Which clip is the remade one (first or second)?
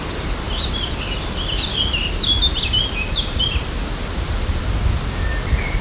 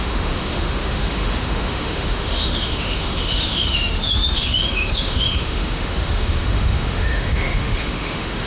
second